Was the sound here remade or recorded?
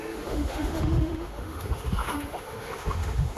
remade